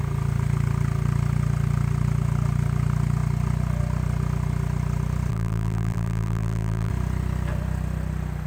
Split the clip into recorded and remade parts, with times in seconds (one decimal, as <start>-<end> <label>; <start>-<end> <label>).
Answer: 0.0-5.3 recorded; 5.3-6.9 remade; 6.9-8.5 recorded